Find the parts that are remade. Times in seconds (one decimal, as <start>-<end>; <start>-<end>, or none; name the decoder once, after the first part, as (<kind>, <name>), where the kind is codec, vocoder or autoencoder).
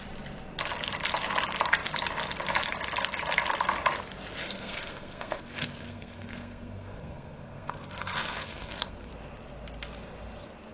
4.4-9.1 (codec, SNAC)